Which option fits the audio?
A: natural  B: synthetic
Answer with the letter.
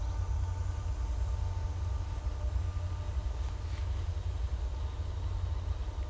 A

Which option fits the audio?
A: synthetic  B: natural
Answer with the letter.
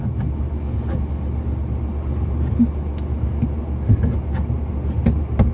B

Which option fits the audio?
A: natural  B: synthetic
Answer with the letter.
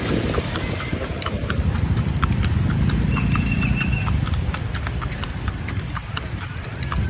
B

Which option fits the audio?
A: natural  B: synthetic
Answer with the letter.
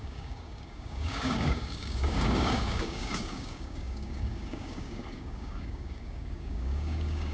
B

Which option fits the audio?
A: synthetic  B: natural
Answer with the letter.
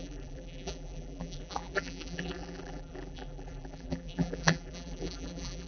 A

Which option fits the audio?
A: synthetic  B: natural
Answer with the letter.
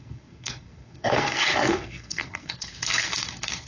A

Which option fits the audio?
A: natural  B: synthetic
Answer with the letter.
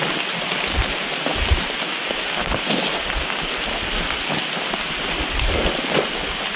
A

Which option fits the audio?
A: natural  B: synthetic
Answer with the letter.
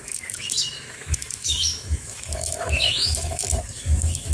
B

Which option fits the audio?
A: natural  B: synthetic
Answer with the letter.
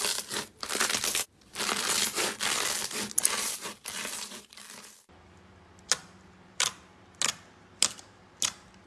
A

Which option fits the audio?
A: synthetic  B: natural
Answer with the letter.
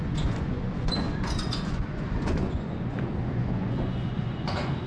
A